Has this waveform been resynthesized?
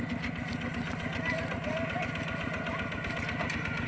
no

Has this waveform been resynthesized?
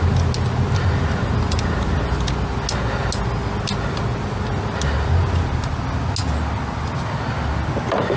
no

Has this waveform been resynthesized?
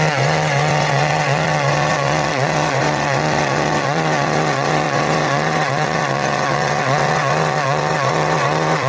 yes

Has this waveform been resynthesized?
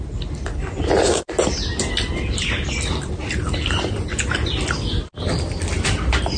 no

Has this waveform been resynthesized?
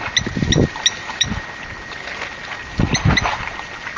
no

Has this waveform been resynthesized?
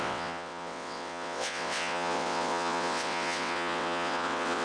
yes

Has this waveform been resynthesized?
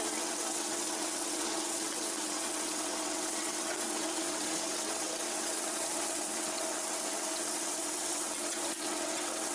yes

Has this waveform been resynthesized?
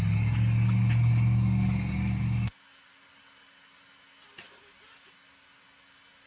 no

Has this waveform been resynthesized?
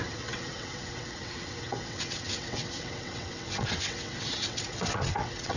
yes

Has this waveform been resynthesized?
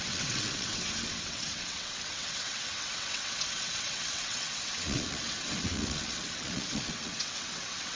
yes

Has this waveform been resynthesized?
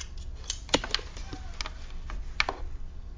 no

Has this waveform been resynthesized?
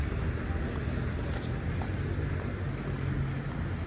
no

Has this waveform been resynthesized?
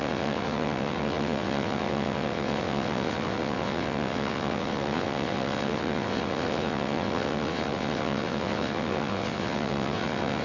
yes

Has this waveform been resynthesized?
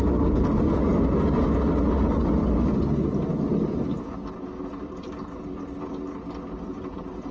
no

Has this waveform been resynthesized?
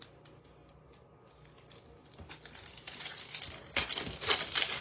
no